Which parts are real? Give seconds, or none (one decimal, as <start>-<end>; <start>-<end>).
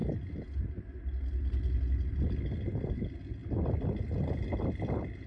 0.0-5.3